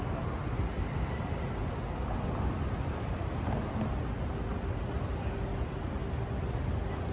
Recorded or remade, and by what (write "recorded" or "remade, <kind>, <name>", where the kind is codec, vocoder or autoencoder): recorded